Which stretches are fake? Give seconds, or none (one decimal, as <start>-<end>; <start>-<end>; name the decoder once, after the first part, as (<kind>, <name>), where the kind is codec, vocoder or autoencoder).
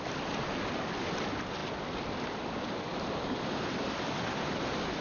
none